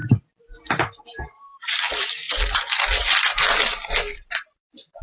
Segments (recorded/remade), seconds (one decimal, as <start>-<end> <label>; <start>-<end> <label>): 0.0-5.0 remade